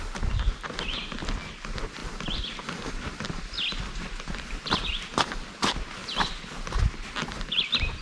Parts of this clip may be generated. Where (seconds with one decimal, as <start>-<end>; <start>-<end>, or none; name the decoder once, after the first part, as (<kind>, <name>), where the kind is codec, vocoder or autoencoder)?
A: none